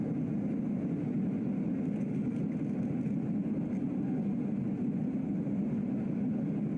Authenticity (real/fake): real